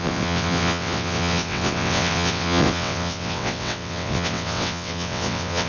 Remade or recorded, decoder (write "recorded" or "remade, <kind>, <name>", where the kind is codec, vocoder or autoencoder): remade, vocoder, WaveNeXt